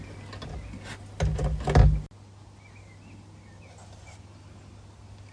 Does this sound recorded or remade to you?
recorded